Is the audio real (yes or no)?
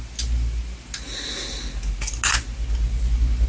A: yes